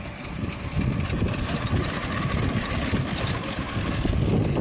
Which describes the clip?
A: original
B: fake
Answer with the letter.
A